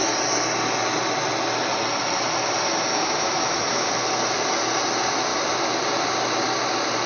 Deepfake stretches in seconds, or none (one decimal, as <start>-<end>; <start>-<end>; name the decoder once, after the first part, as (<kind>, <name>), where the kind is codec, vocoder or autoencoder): 2.9-3.9 (autoencoder, DAC-VAE)